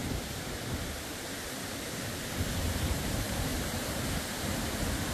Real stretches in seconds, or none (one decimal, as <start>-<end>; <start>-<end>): 3.5-5.1